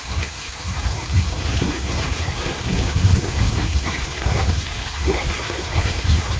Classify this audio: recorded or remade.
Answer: remade